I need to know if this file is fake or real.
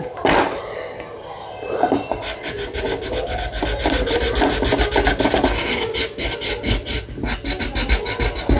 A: real